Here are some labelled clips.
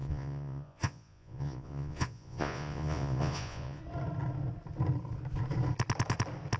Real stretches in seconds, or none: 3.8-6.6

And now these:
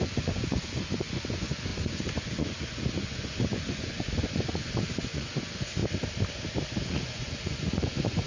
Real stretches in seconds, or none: 5.8-6.8

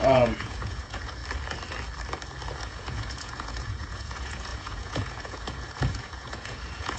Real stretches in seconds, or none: 1.2-2.6

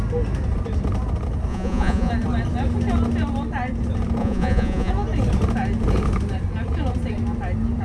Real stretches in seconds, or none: 0.0-1.5; 2.1-4.2; 4.9-7.8

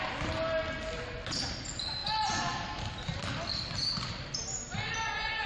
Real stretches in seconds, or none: 0.0-5.5

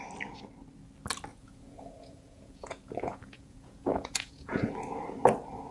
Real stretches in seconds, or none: 0.0-1.3; 4.7-5.7

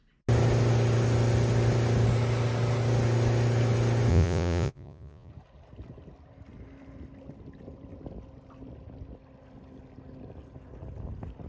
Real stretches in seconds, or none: 0.0-4.1; 5.3-11.5